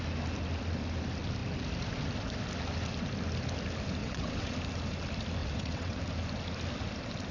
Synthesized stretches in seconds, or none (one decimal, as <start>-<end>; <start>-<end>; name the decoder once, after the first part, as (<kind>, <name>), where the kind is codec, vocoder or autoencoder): 4.0-4.5 (vocoder, WaveNeXt); 5.4-6.0